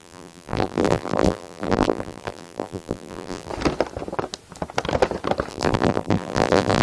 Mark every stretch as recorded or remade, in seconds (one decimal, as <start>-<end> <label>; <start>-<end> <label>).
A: 0.0-3.5 remade; 3.5-5.5 recorded; 5.5-6.8 remade